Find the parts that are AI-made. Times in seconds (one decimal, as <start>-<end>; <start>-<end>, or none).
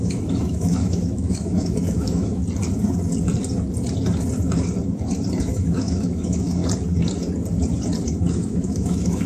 0.0-2.4; 5.4-6.6; 8.3-9.3